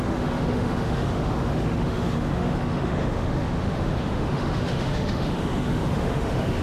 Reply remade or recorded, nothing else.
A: remade